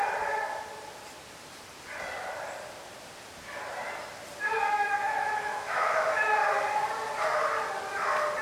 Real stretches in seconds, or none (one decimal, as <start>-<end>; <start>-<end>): 0.0-4.7; 6.4-8.4